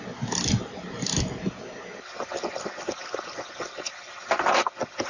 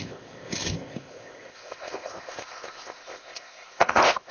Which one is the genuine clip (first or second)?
first